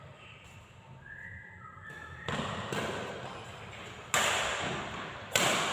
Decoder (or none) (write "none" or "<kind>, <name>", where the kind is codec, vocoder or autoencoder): none